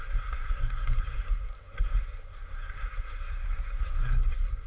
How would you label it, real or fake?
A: fake